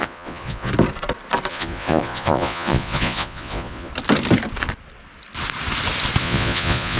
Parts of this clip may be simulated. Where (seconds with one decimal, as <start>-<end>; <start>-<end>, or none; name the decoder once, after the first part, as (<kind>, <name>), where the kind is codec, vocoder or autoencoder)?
0.0-0.7 (vocoder, Vocos); 1.5-3.9; 6.2-7.0